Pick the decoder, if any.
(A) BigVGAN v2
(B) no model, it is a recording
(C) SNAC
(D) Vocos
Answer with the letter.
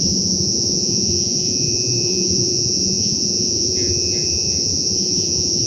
D